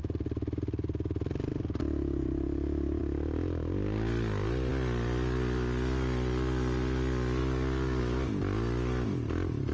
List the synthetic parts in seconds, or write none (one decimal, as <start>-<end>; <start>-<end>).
none